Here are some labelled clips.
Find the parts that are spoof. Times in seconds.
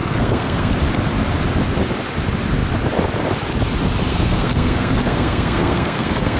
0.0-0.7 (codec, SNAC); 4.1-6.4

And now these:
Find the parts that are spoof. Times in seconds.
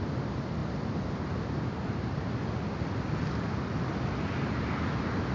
none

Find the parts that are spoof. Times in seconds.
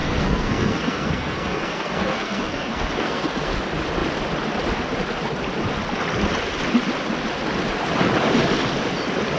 0.0-3.6 (codec, SNAC)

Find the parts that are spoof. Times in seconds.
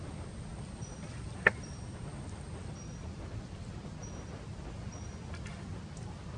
none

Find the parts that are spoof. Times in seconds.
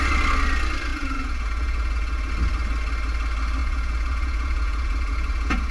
0.9-2.3 (vocoder, Vocos); 3.6-5.7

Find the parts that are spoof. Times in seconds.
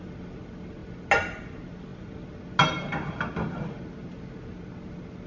none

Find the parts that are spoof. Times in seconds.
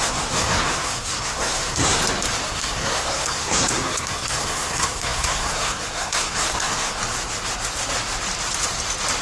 0.0-2.0 (codec, SNAC); 2.5-7.0